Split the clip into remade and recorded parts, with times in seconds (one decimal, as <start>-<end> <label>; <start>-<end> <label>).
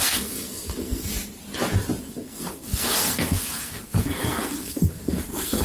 0.0-1.1 remade; 1.1-2.0 recorded; 2.0-5.6 remade